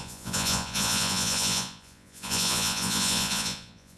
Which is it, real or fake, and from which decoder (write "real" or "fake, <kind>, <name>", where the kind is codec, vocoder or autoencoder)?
fake, vocoder, Vocos